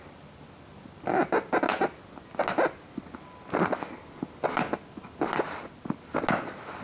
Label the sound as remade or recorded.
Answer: recorded